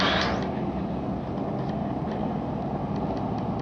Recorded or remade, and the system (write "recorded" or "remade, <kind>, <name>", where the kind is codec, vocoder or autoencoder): recorded